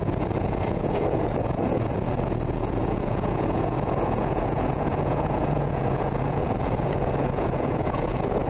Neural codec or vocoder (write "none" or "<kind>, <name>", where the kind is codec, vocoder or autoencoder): vocoder, Vocos